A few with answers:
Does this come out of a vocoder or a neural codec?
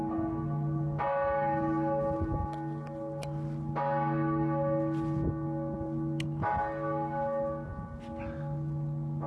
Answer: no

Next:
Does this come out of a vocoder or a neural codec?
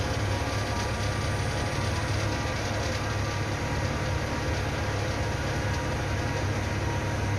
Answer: no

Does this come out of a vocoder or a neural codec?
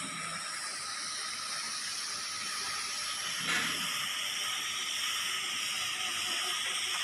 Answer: no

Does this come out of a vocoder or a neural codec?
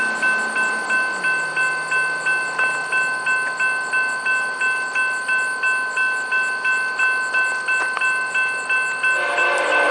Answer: no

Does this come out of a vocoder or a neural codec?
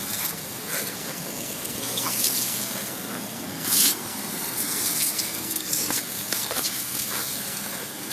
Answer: yes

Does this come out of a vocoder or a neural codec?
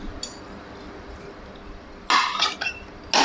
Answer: no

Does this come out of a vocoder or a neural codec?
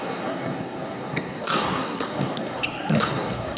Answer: yes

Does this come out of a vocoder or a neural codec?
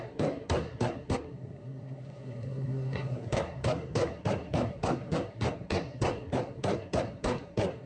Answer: yes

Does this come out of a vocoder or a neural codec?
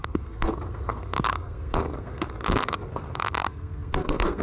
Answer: yes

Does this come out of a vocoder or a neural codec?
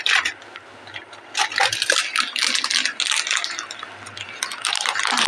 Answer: no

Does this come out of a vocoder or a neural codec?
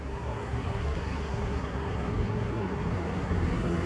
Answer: yes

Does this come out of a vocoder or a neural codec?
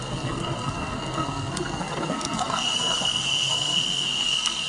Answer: yes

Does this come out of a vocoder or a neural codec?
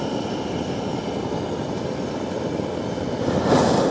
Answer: no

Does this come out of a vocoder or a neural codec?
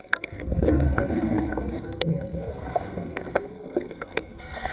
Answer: yes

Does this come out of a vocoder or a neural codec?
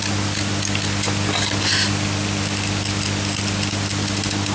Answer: no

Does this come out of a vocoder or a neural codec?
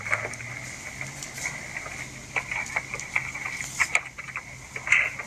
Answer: no